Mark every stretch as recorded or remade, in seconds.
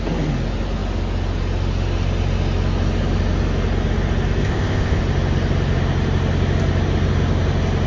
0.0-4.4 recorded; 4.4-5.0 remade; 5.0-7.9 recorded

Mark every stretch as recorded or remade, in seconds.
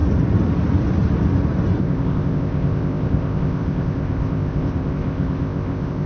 0.0-1.8 recorded; 1.8-6.1 remade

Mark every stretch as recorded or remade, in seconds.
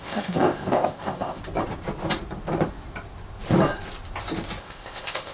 0.0-1.4 remade; 1.4-4.6 recorded; 4.6-5.3 remade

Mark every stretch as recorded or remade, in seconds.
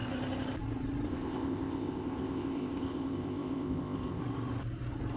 0.0-1.1 recorded; 1.1-4.2 remade; 4.2-5.2 recorded